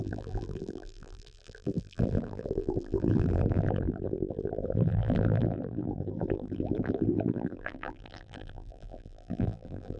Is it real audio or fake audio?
fake